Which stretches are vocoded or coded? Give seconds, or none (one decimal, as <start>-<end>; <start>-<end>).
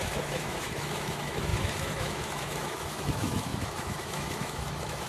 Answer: 0.0-5.1